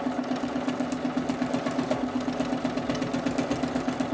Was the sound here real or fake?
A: real